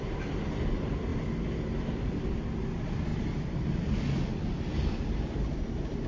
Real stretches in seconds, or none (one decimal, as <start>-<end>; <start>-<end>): 0.0-6.1